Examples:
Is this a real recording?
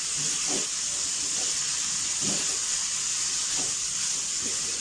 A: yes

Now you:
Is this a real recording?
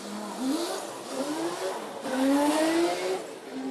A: yes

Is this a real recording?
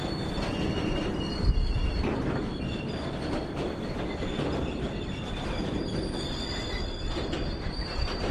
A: yes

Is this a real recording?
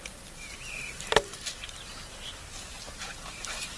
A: no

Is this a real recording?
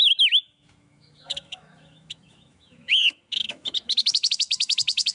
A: no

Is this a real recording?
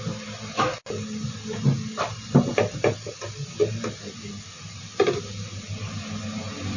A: yes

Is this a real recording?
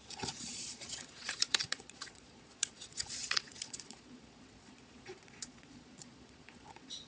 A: no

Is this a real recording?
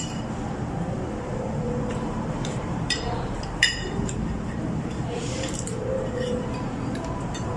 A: no